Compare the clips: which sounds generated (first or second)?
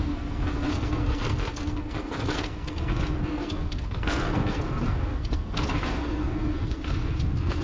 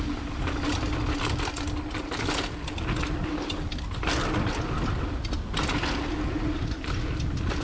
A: first